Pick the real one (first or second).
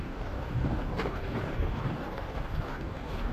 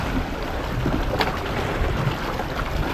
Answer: second